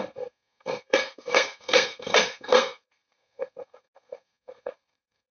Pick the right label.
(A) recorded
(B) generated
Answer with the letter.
B